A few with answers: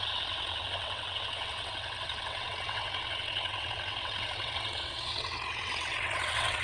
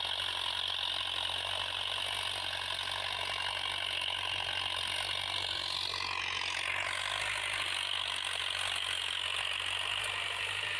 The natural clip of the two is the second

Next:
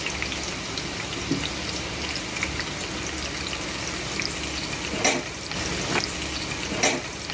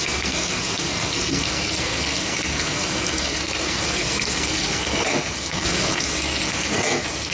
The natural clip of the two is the first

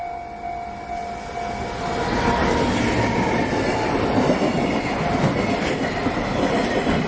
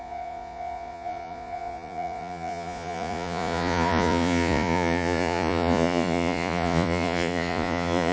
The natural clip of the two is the first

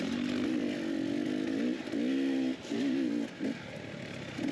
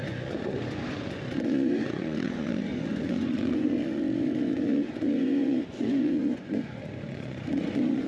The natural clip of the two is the first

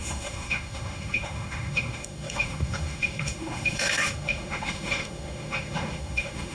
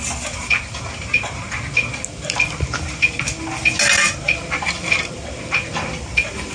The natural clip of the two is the second